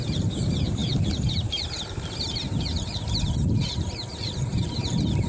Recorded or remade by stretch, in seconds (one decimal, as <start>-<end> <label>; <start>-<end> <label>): 0.0-5.3 remade